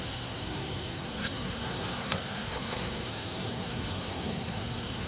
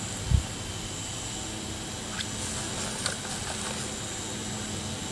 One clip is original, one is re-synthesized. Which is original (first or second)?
second